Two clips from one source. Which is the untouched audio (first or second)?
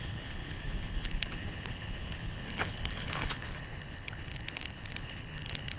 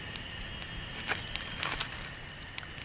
second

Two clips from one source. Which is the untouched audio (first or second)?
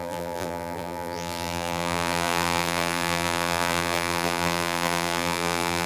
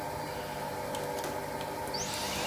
second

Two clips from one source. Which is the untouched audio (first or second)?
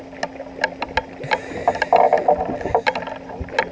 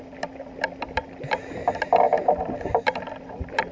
first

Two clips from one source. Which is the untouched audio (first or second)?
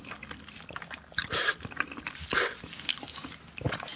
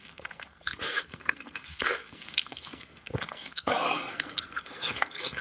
first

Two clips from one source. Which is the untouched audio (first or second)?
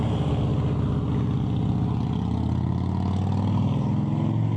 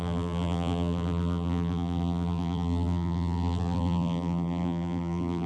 first